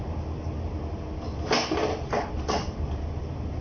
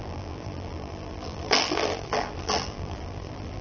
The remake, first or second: second